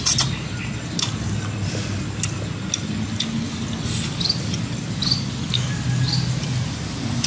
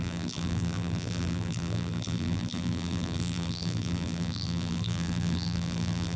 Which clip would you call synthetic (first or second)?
second